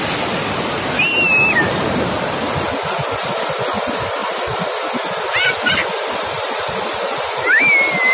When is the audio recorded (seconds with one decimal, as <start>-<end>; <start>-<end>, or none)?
0.0-8.1